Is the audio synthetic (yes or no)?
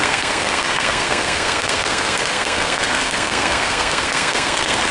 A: yes